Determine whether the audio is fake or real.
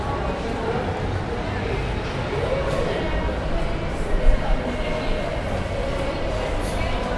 real